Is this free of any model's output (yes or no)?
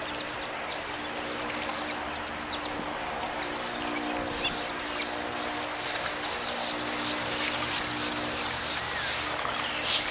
yes